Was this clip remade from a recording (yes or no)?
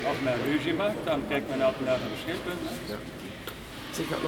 no